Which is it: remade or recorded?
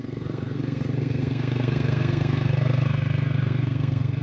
remade